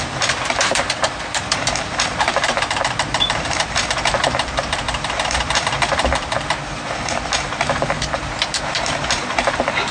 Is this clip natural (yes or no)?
no